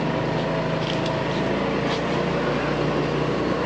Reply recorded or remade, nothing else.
recorded